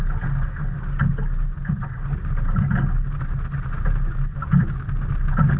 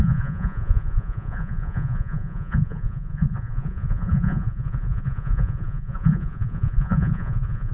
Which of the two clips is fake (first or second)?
second